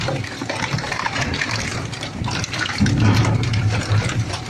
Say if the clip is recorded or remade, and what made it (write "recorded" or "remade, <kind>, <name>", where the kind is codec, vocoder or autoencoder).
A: remade, vocoder, BigVGAN v2